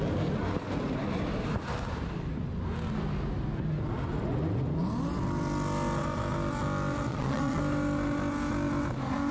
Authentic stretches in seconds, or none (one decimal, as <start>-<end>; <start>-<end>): 0.0-7.1; 7.6-9.3